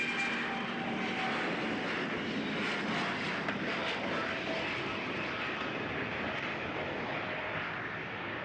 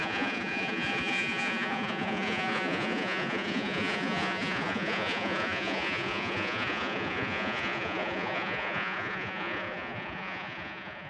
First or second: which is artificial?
second